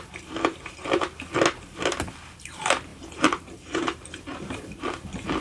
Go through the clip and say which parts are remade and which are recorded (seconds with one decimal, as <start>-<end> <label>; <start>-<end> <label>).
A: 0.0-2.9 recorded; 2.9-4.8 remade; 4.8-5.4 recorded